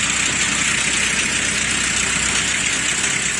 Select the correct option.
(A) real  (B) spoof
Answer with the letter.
A